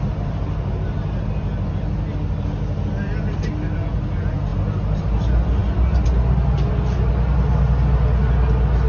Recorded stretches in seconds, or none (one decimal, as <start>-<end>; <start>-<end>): 0.0-8.9